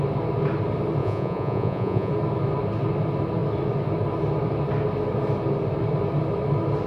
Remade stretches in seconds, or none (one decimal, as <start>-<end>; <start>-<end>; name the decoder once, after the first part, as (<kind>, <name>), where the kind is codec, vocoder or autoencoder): 1.0-2.1 (vocoder, Vocos)